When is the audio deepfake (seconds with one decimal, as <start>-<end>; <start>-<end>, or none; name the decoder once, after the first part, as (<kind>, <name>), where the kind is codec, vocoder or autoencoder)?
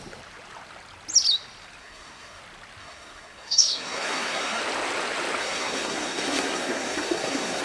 1.8-2.4 (codec, SNAC); 2.8-4.6; 5.4-7.6